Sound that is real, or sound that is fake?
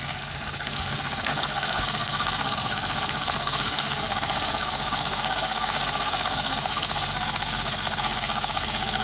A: fake